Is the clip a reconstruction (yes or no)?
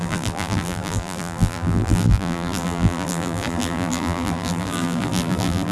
yes